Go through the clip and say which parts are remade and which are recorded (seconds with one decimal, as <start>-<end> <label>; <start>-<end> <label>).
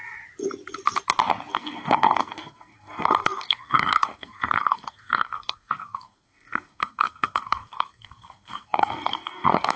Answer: 0.0-1.5 recorded; 1.5-9.8 remade